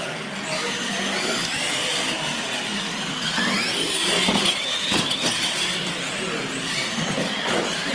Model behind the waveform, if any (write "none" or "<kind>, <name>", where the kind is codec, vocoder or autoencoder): none